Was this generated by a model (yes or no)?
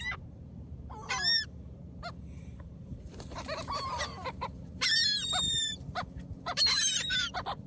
yes